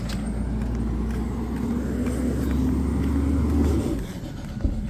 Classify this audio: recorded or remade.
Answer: recorded